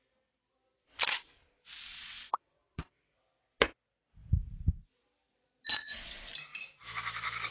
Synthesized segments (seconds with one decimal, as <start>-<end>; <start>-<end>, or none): 1.9-3.2; 5.7-6.3